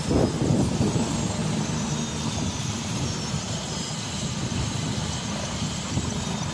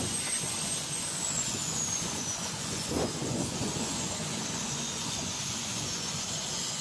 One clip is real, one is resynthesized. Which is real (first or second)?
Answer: first